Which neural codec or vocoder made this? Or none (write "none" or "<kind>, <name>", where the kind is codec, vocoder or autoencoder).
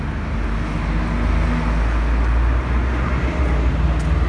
none